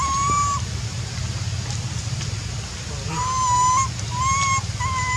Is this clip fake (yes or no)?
no